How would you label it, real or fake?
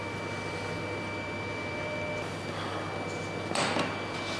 real